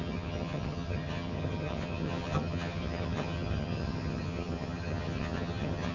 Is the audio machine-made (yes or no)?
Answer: yes